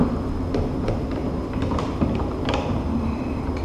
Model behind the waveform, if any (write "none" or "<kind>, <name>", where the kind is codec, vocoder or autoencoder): none